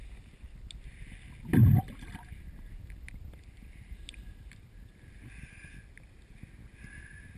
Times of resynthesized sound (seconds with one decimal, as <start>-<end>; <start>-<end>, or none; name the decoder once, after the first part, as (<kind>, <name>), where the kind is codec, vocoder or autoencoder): 1.6-4.9 (vocoder, BigVGAN v2)